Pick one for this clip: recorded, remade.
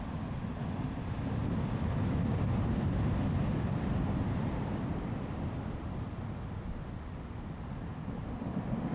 recorded